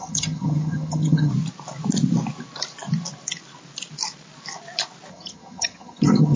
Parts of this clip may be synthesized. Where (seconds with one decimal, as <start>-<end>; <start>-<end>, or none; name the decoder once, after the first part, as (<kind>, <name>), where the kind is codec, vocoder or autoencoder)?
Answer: 0.0-1.3 (vocoder, HiFi-GAN); 5.1-6.4